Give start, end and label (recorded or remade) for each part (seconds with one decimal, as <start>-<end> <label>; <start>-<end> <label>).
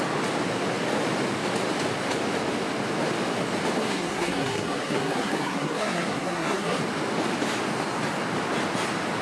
0.0-3.8 recorded; 3.8-6.8 remade; 6.8-9.2 recorded